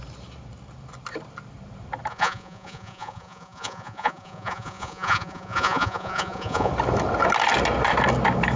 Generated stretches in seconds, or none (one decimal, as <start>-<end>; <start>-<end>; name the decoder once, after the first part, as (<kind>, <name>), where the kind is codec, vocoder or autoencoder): 2.1-6.7 (vocoder, Vocos)